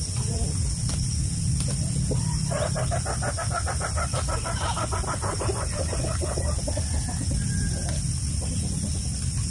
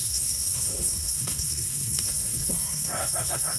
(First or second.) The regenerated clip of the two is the second